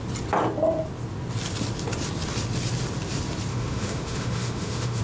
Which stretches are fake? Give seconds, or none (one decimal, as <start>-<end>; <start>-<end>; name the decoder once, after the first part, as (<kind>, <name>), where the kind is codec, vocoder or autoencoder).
3.5-5.0 (autoencoder, DAC-VAE)